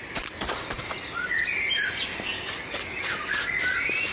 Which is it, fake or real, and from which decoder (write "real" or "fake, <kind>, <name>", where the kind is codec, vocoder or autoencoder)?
fake, vocoder, BigVGAN v2